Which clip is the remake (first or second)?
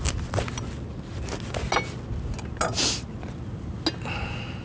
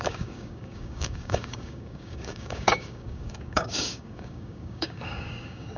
second